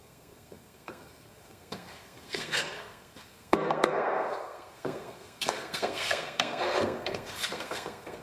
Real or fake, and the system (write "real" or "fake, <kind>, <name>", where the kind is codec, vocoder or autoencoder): fake, codec, SNAC